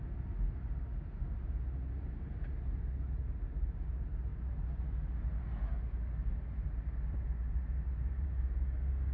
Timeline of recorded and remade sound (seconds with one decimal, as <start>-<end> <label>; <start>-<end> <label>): 0.0-4.3 recorded; 4.3-4.8 remade; 4.8-6.2 recorded; 6.2-6.8 remade; 6.8-7.4 recorded; 7.4-8.4 remade; 8.4-9.1 recorded